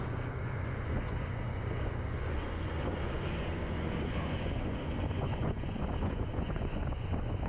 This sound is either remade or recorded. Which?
remade